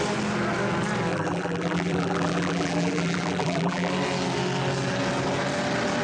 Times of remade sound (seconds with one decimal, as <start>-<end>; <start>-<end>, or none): 1.1-3.9